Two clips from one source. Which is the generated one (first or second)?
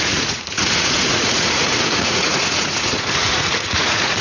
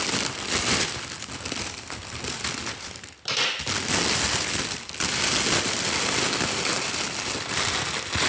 first